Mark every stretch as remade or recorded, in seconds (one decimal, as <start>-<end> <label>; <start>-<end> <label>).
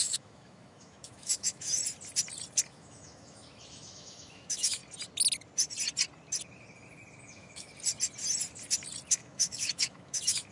0.0-1.8 remade; 1.8-2.7 recorded; 2.7-4.8 remade; 4.8-7.2 recorded; 7.2-7.7 remade; 7.7-9.1 recorded; 9.1-10.5 remade